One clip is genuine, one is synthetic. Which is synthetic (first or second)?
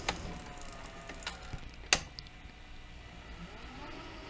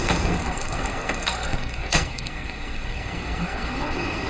second